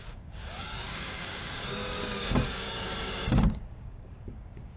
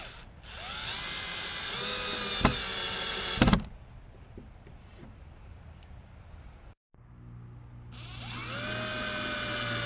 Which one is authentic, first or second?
second